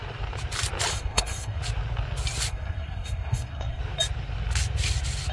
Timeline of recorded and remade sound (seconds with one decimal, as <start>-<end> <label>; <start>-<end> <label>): 0.0-0.9 recorded; 0.9-1.6 remade; 1.6-2.5 recorded; 2.5-3.8 remade; 3.8-5.3 recorded